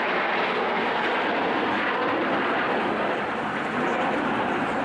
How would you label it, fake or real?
real